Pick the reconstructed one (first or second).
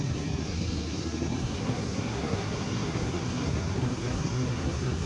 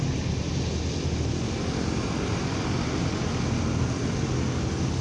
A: first